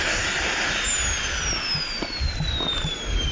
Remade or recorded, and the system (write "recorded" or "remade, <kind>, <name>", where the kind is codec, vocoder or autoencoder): recorded